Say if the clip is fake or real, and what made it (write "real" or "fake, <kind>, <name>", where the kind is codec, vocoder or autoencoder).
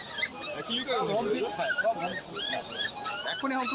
real